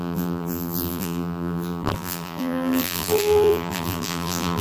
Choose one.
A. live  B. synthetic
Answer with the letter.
B